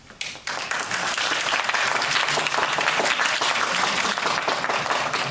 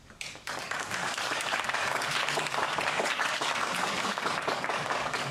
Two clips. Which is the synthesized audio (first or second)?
second